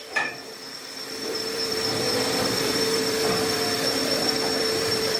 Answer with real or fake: fake